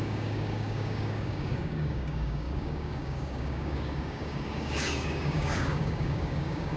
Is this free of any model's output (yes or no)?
no